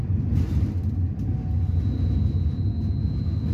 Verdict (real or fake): real